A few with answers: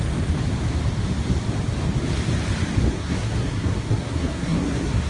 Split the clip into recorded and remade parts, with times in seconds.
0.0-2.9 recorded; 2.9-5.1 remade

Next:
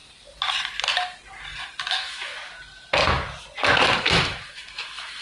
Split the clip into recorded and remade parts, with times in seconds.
0.0-1.9 recorded; 1.9-2.3 remade; 2.3-4.0 recorded; 4.0-5.2 remade

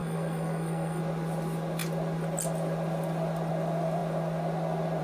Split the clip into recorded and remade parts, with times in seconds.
0.0-1.0 remade; 1.0-5.0 recorded